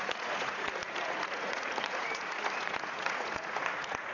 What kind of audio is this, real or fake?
fake